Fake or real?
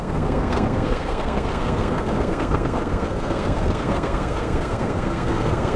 fake